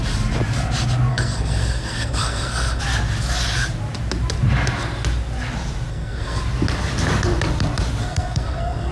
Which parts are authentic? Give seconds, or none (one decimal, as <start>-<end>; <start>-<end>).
0.0-1.1; 2.8-5.9; 6.4-8.0